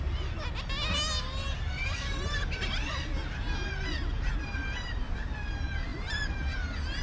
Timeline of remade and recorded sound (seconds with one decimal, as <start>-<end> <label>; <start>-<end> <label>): 0.0-7.0 recorded